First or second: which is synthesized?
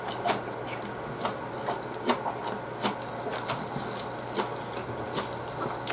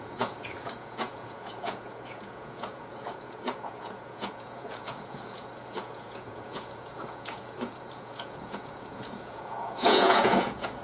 second